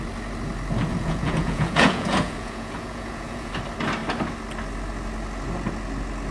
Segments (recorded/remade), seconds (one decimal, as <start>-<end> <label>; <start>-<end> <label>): 0.0-0.9 recorded; 0.9-3.5 remade; 3.5-6.3 recorded